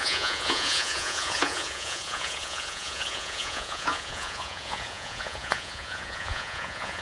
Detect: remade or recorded remade